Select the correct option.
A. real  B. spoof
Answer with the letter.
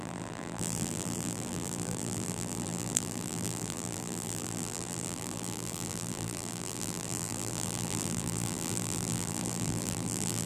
B